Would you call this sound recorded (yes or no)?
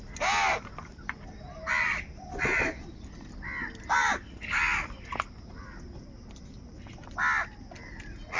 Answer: yes